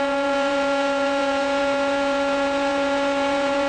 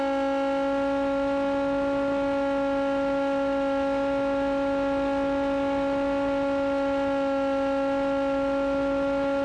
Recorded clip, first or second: second